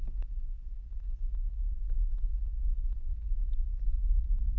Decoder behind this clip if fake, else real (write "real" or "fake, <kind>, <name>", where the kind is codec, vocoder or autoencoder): real